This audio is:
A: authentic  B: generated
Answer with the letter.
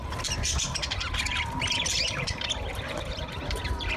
B